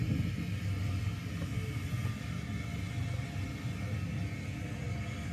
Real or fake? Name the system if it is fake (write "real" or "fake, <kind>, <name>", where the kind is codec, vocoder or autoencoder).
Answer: real